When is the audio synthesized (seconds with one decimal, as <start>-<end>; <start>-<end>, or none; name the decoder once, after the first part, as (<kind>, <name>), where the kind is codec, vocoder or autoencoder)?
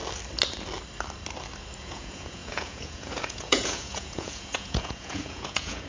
1.8-5.9 (vocoder, Vocos)